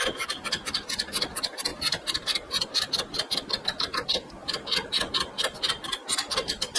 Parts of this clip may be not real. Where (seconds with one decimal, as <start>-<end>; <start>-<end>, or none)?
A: 1.7-2.9

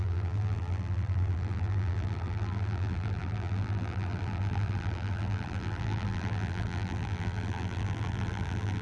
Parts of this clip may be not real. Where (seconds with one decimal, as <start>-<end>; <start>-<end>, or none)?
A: 0.0-8.8

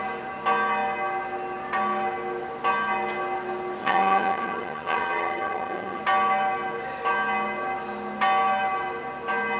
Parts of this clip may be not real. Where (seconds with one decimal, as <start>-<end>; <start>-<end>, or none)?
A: 3.8-6.0

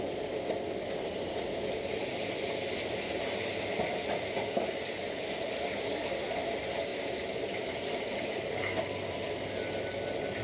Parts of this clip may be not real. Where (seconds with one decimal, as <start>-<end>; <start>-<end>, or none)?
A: none

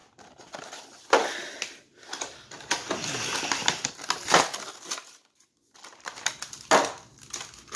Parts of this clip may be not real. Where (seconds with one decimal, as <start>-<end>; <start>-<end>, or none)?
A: none

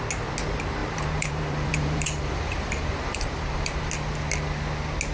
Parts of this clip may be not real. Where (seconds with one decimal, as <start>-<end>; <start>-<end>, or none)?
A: 0.8-3.9